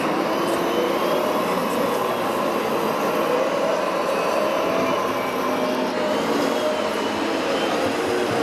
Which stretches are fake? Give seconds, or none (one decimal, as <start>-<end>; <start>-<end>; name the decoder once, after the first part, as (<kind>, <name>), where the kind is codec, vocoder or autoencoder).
none